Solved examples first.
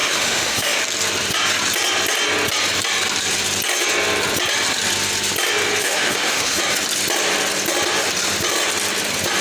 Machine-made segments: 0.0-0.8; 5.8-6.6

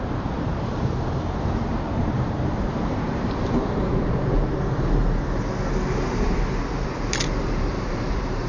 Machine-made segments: 0.0-5.0; 7.4-8.5

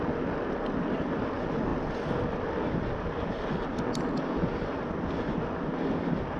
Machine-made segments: none

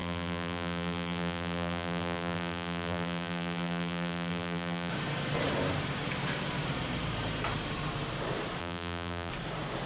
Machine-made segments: 0.0-4.9; 8.6-9.3

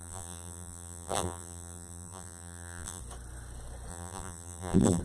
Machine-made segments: 0.0-3.0; 3.9-5.0

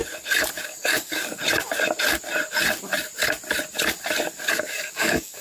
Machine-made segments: 0.6-1.4; 4.6-5.4

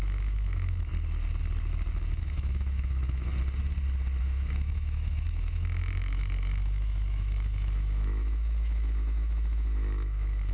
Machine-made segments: 0.0-0.9; 2.2-3.3; 4.2-10.5